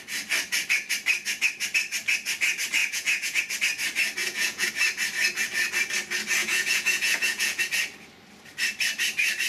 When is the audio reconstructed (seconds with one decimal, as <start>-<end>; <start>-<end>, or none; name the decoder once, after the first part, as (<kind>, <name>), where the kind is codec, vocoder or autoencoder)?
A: 2.8-3.4 (vocoder, Vocos); 4.2-4.7; 6.4-7.6